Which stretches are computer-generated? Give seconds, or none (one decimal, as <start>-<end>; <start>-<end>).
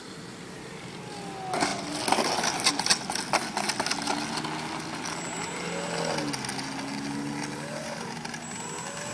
none